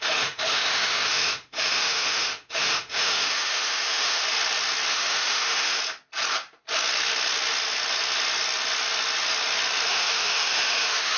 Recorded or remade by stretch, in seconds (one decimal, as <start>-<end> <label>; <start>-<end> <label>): 0.0-4.2 remade; 4.2-4.9 recorded; 4.9-5.8 remade; 5.8-9.9 recorded; 9.9-11.2 remade